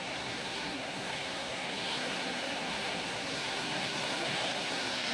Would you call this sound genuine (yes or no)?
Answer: no